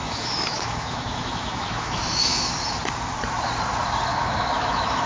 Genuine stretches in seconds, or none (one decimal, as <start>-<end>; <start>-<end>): 2.5-4.1